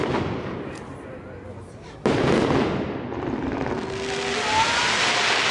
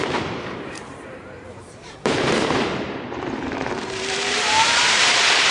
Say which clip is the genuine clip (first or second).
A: first